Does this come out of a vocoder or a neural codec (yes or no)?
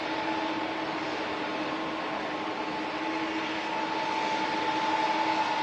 no